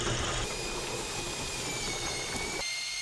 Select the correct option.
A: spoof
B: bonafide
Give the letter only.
A